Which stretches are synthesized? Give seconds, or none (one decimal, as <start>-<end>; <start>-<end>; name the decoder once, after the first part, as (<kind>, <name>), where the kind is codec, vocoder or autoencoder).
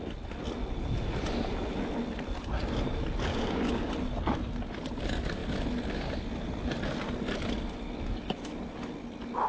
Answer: 3.3-3.9 (codec, DAC)